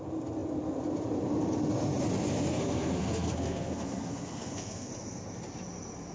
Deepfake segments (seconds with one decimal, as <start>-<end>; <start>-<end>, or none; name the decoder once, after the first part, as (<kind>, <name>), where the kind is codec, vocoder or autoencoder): 2.5-4.9 (codec, SNAC)